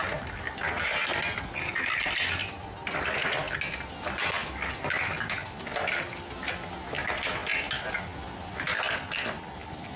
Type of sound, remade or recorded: recorded